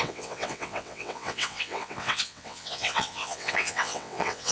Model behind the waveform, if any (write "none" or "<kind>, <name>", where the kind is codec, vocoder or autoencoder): vocoder, WaveNeXt